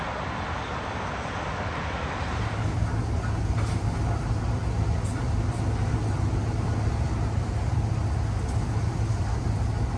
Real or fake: real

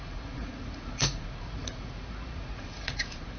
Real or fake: fake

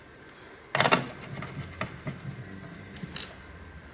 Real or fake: real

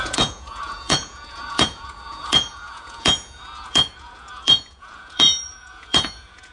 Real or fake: fake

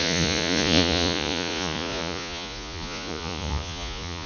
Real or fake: fake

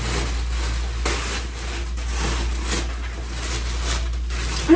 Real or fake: real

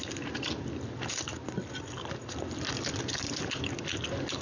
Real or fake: real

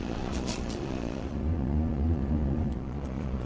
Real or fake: fake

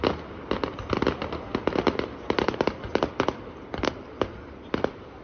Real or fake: real